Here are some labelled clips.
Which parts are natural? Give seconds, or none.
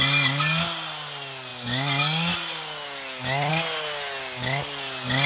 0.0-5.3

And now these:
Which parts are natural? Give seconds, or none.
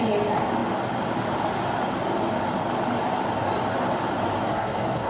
0.0-4.5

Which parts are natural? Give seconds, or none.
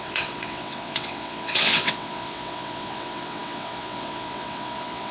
none